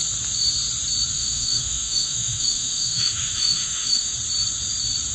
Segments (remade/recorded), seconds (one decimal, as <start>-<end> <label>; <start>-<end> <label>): 0.0-1.1 recorded; 1.1-4.1 remade; 4.1-5.1 recorded